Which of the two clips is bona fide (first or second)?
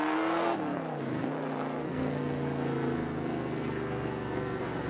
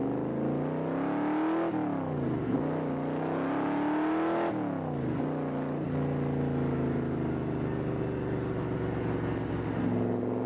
second